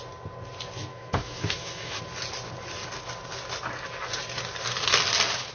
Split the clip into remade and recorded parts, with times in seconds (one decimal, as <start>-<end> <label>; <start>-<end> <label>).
0.0-0.9 recorded; 0.9-2.0 remade; 2.0-5.5 recorded